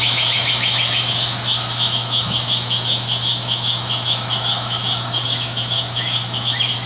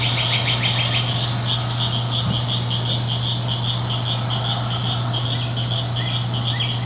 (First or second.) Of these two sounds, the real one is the second